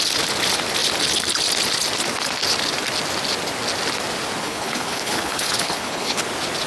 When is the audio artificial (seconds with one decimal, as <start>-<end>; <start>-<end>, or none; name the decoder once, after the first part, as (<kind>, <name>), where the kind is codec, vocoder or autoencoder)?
4.4-6.2 (codec, HILCodec)

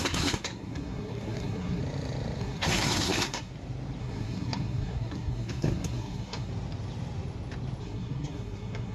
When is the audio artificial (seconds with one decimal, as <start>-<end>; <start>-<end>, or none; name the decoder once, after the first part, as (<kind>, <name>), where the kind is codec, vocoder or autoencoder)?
0.0-1.8 (codec, SNAC); 2.4-3.5; 4.0-6.5; 7.8-8.9

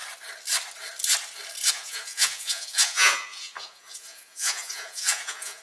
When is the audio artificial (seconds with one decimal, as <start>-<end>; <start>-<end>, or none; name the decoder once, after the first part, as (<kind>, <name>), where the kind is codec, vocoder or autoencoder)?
1.7-5.6 (vocoder, Vocos)

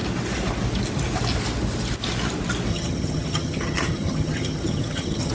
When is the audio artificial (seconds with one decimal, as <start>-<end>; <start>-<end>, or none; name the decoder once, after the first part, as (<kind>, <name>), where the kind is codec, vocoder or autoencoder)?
2.7-5.3 (vocoder, HiFi-GAN)

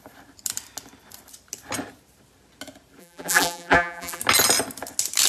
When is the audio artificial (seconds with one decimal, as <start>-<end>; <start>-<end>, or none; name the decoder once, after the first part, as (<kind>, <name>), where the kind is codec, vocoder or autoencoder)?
3.0-4.2 (vocoder, BigVGAN v2)